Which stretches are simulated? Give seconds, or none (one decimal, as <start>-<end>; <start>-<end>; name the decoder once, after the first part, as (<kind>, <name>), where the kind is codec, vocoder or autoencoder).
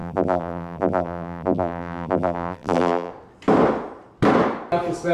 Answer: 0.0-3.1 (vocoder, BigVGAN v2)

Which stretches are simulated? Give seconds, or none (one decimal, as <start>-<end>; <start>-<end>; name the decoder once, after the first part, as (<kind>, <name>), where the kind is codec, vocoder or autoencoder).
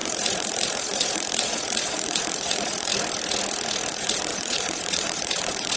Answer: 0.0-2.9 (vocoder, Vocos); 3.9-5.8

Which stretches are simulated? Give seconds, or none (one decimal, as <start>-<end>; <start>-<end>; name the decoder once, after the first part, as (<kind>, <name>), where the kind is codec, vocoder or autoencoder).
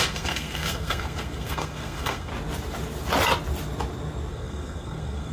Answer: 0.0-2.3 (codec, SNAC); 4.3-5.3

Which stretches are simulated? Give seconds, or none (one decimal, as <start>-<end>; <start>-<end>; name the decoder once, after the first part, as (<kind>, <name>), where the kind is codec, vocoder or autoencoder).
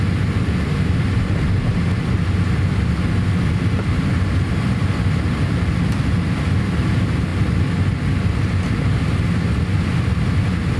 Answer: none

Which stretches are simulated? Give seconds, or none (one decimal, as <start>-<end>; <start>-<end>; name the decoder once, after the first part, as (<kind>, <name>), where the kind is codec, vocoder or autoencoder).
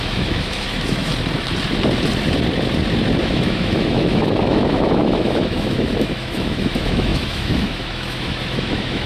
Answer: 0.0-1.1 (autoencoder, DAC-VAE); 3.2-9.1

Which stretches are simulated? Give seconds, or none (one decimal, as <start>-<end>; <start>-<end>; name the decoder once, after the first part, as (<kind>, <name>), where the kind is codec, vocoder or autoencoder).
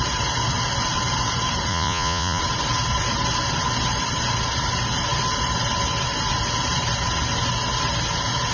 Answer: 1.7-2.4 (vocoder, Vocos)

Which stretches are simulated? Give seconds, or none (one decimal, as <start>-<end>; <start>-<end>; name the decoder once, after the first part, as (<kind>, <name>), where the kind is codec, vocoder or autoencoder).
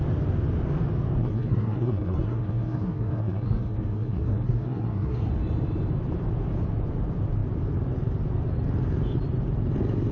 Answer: 1.2-5.3 (codec, SNAC)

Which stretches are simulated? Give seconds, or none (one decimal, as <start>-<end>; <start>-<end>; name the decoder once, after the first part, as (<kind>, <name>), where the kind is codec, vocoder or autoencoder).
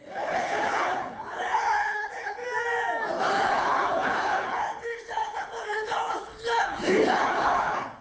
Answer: 0.0-2.4 (codec, HILCodec); 3.2-8.0